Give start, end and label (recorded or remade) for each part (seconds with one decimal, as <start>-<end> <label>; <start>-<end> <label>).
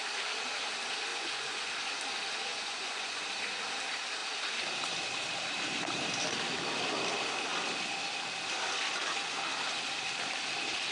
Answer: 0.0-1.1 recorded; 1.1-1.7 remade; 1.7-2.5 recorded; 2.5-3.2 remade; 3.2-10.9 recorded